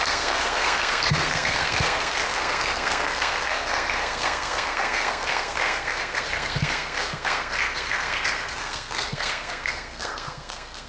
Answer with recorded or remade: remade